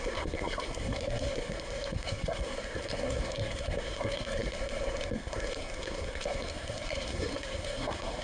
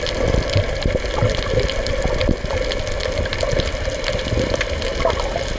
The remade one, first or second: first